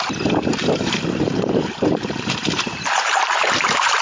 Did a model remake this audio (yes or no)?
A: yes